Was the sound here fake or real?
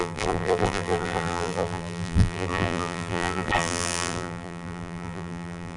fake